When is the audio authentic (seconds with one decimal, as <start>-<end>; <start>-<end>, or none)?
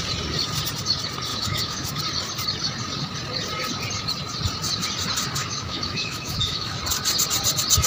0.0-1.3; 2.0-5.4; 6.8-7.9